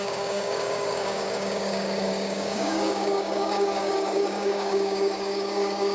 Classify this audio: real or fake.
fake